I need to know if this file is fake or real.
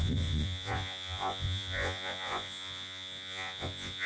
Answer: fake